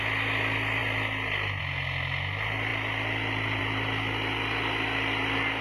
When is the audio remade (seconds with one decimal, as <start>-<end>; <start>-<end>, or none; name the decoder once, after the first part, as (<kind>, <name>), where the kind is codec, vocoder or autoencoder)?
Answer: none

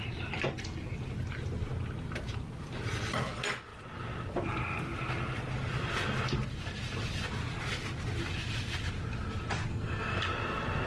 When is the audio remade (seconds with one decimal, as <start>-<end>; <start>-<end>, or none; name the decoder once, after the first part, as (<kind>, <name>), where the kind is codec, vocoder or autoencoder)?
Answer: 9.7-10.2 (codec, SNAC)

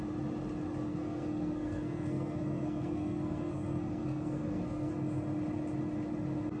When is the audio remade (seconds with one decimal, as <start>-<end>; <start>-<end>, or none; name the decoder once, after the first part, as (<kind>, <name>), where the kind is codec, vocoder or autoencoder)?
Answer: 0.9-4.9 (codec, SNAC)

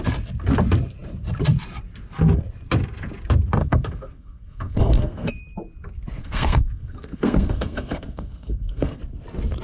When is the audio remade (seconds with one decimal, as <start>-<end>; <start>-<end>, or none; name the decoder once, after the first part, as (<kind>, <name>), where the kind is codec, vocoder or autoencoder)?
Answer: 3.6-5.4 (codec, SNAC); 6.2-9.0

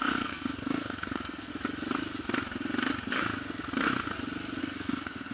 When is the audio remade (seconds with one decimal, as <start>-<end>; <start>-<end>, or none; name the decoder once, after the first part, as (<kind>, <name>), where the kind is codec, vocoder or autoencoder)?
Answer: 0.0-1.5 (codec, SNAC); 4.6-5.3

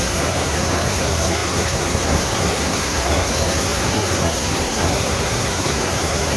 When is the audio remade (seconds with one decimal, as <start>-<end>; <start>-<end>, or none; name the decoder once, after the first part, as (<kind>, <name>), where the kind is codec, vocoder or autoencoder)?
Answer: 0.0-6.4 (codec, SNAC)

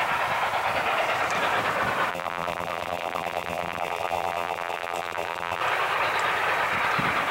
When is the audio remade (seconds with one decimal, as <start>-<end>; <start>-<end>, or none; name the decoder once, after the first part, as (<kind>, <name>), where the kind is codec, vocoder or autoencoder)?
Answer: 2.1-5.6 (vocoder, BigVGAN v2)